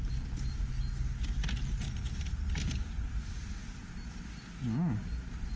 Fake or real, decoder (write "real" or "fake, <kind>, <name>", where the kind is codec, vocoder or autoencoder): real